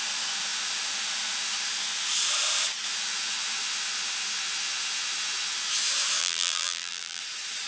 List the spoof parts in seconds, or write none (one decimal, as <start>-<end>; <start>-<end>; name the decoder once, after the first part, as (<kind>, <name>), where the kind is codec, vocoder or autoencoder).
6.2-7.2 (vocoder, BigVGAN v2)